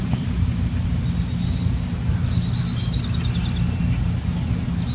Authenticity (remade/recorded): recorded